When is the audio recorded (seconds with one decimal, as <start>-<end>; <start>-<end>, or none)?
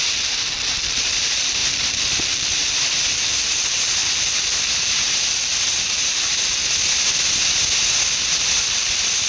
6.6-8.6